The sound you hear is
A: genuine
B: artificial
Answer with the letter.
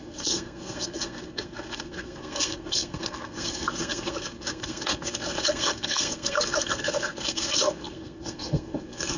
B